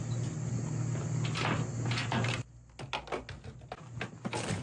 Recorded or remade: recorded